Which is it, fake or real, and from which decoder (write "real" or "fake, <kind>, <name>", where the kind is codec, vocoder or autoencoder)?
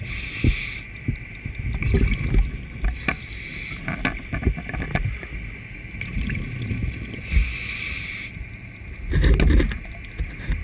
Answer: real